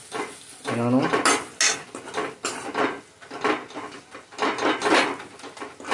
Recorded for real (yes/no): yes